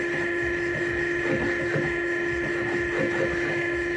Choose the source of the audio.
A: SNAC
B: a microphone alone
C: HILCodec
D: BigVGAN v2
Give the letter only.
B